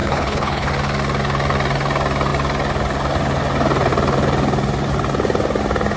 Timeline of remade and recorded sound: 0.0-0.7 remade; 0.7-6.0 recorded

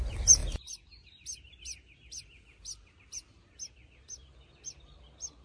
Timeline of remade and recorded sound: 0.0-5.4 recorded

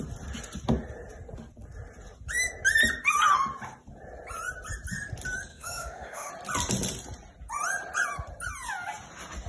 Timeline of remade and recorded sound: 0.0-5.5 recorded; 5.5-6.3 remade; 6.3-9.5 recorded

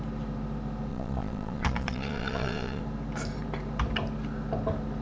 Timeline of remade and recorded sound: 0.0-0.9 recorded; 0.9-2.8 remade; 2.8-5.0 recorded

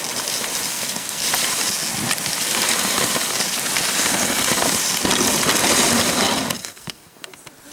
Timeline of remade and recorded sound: 0.0-0.7 recorded; 0.7-1.2 remade; 1.2-6.6 recorded; 6.6-7.3 remade; 7.3-7.7 recorded

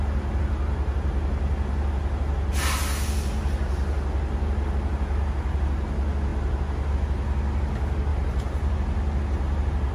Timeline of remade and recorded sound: 0.0-8.1 recorded; 8.1-8.7 remade; 8.7-9.9 recorded

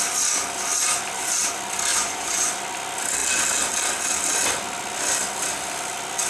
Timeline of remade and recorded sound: 0.0-1.9 recorded; 1.9-2.5 remade; 2.5-6.3 recorded